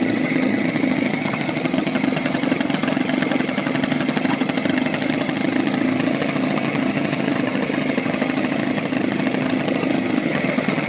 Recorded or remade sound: remade